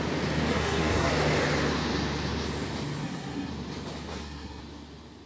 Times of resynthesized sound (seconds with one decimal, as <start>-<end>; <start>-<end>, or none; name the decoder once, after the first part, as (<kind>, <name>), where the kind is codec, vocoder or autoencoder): 0.5-1.1 (codec, SNAC); 3.0-3.5; 4.1-4.6